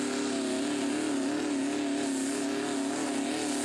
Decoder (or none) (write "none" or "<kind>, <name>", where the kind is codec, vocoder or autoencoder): none